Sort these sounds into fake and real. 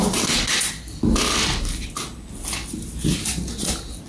real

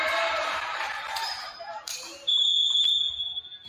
fake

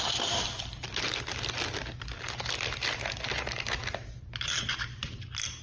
real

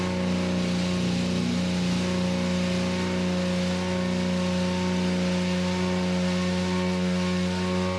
real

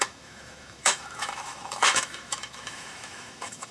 fake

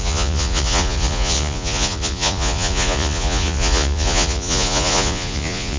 fake